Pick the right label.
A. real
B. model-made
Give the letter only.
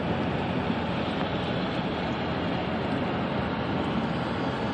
A